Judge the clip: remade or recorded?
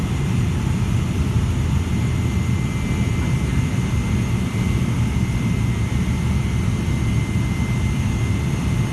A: recorded